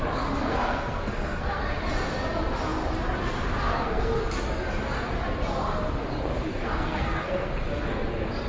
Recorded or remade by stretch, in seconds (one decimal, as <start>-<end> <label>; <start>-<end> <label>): 0.0-0.4 recorded; 0.4-1.6 remade; 1.6-3.7 recorded; 3.7-4.2 remade; 4.2-6.5 recorded; 6.5-7.5 remade; 7.5-8.5 recorded